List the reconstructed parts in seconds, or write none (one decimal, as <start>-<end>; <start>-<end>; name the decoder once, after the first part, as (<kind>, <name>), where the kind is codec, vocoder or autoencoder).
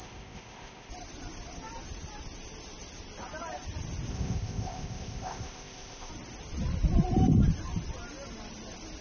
0.0-0.9 (codec, ZipCodec); 4.1-6.1